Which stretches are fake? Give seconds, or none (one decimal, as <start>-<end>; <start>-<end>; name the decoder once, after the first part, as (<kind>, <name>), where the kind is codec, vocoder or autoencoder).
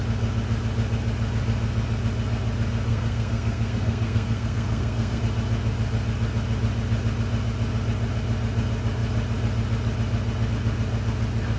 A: 2.9-5.2 (codec, SNAC)